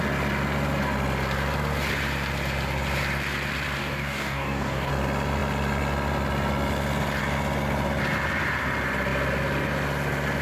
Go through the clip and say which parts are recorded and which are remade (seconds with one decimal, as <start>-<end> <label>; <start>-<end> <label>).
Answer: 0.0-3.8 recorded; 3.8-4.9 remade; 4.9-10.4 recorded